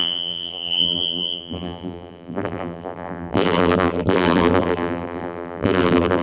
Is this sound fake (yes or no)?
yes